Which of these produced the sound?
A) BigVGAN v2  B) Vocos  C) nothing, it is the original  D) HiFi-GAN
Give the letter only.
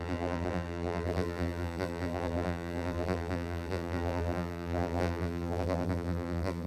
A